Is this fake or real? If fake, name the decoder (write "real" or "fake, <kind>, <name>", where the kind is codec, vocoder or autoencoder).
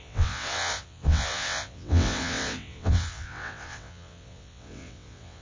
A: fake, vocoder, WaveNeXt